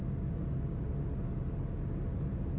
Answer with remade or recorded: recorded